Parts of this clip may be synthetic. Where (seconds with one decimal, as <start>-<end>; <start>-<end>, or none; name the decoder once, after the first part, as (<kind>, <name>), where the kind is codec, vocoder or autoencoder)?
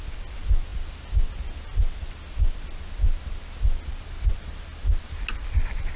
none